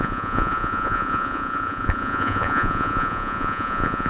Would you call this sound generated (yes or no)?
yes